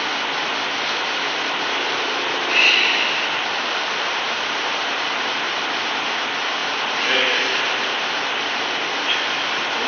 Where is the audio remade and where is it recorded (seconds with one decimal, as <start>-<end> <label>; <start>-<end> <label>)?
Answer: 0.0-9.9 recorded